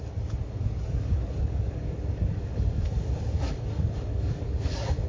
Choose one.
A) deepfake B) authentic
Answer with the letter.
A